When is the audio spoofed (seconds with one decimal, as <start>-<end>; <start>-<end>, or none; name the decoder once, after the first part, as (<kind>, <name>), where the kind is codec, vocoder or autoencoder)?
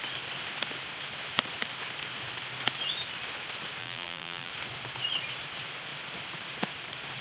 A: 3.8-4.5 (vocoder, BigVGAN v2)